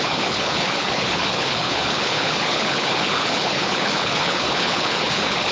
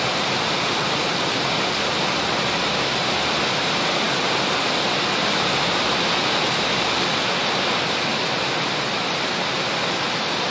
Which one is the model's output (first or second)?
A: first